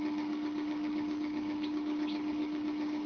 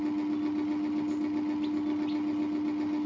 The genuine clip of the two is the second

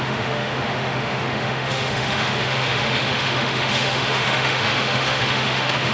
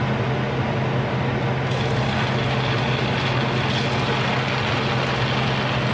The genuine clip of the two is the second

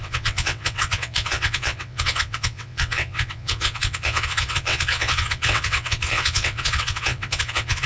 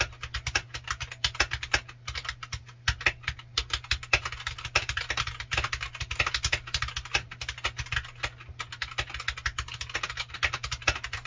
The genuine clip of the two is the second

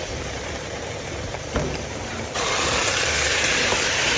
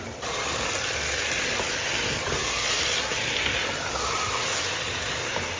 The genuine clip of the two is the second